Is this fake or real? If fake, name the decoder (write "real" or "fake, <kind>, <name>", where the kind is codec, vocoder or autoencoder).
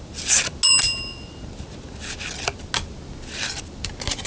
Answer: real